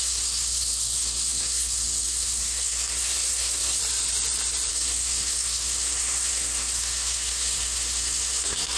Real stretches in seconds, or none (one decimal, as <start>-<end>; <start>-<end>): 3.8-4.7